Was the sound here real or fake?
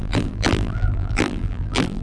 fake